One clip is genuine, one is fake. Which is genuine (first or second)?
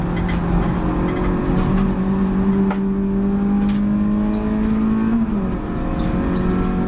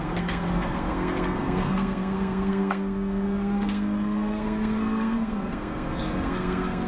first